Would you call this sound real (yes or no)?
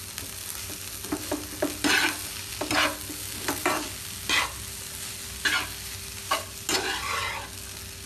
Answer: yes